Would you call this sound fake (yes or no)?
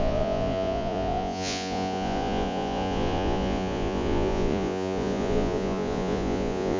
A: yes